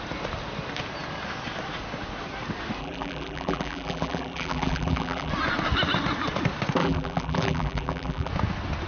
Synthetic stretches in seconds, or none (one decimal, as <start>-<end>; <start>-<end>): 2.8-5.3; 6.8-8.3